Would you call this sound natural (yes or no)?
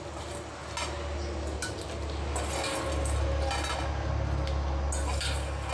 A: yes